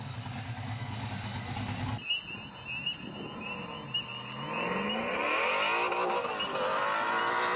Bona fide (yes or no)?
yes